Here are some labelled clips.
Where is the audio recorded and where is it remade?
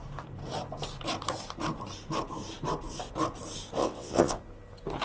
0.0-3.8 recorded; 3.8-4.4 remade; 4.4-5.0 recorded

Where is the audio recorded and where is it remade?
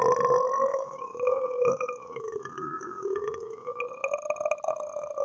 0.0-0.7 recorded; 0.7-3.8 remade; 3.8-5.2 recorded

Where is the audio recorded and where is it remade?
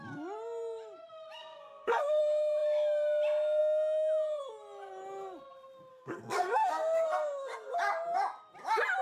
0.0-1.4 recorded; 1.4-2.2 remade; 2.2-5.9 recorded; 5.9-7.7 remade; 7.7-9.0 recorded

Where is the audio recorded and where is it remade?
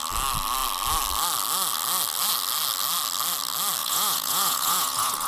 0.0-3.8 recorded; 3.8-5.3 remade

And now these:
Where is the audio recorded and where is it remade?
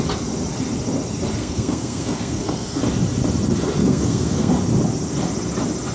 0.0-1.4 recorded; 1.4-2.8 remade; 2.8-3.8 recorded; 3.8-4.5 remade; 4.5-5.9 recorded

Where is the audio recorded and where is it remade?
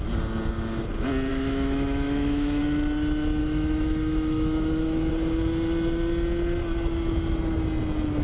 0.0-1.3 recorded; 1.3-2.6 remade; 2.6-3.4 recorded; 3.4-5.1 remade; 5.1-8.2 recorded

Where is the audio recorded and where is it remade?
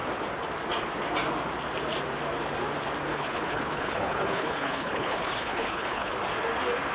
0.0-3.1 recorded; 3.1-6.1 remade; 6.1-6.9 recorded